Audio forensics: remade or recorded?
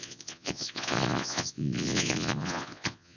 remade